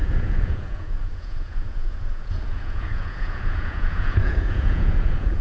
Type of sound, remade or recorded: remade